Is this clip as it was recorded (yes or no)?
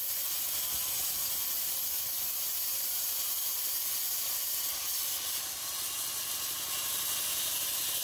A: yes